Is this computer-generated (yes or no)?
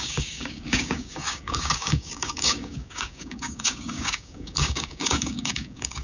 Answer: yes